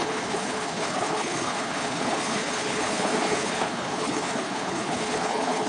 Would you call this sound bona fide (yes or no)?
no